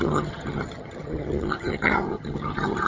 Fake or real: fake